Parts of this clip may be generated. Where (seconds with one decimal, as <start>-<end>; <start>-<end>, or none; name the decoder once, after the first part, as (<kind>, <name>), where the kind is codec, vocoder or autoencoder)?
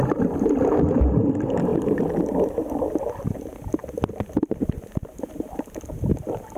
none